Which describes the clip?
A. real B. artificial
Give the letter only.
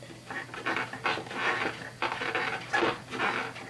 A